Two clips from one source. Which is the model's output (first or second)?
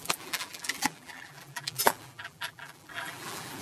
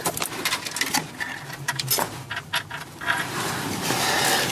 first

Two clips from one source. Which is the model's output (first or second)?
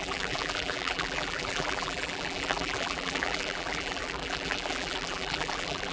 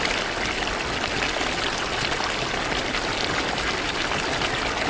first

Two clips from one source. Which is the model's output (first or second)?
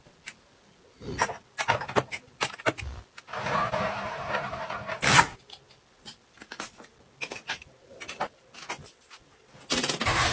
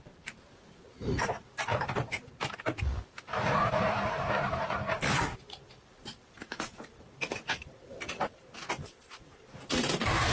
second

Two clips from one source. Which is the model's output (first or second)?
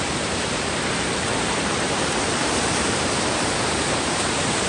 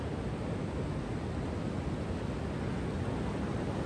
first